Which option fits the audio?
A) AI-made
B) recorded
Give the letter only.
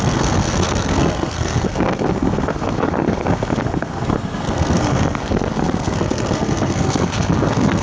A